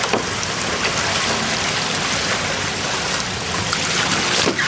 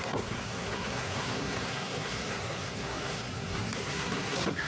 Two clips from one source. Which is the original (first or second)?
first